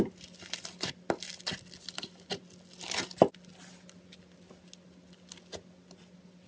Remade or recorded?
recorded